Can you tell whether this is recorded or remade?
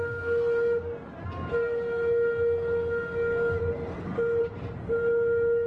recorded